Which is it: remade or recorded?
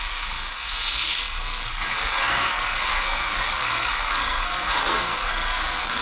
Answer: remade